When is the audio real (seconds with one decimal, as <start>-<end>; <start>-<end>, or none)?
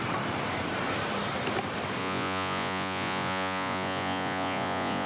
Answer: 0.0-2.0